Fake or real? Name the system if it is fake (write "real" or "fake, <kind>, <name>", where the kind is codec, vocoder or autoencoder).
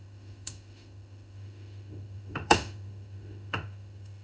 fake, autoencoder, DAC-VAE